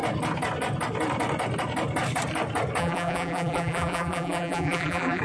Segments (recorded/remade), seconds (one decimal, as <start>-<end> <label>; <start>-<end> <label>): 0.0-2.8 recorded; 2.8-5.2 remade